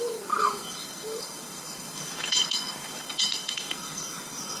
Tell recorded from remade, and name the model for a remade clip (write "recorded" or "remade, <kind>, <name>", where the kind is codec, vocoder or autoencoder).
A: remade, codec, SNAC